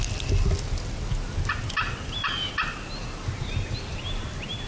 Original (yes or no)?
yes